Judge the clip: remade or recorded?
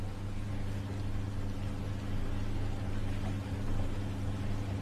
recorded